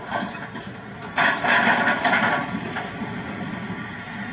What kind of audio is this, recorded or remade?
recorded